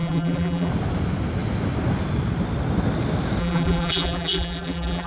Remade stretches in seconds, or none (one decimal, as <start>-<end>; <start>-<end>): 0.0-0.7; 3.4-5.1